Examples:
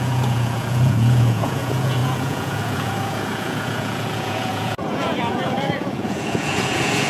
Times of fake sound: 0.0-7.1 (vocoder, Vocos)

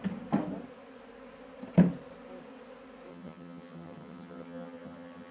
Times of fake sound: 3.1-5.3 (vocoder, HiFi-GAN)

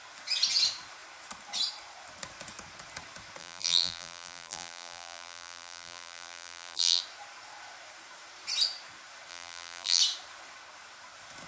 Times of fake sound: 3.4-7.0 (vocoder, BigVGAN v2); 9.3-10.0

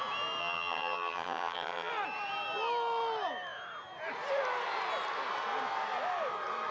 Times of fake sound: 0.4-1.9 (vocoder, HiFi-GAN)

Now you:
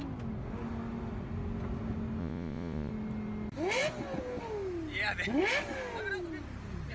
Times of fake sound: 2.2-2.9 (vocoder, Vocos)

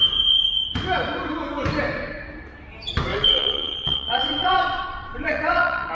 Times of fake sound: 3.1-5.9 (vocoder, WaveNeXt)

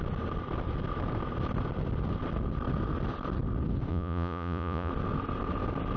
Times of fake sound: 3.9-4.9 (vocoder, Vocos)